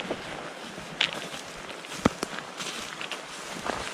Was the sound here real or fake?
real